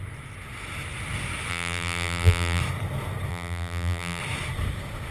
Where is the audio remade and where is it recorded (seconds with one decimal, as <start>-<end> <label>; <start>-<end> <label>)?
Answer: 0.0-1.5 recorded; 1.5-2.6 remade; 2.6-3.3 recorded; 3.3-4.2 remade; 4.2-5.1 recorded